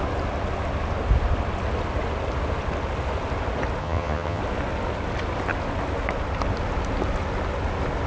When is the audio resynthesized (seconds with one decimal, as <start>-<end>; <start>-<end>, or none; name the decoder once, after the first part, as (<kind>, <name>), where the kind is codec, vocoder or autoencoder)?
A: 3.8-4.4 (vocoder, HiFi-GAN)